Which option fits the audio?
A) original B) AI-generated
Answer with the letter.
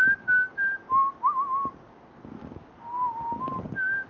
A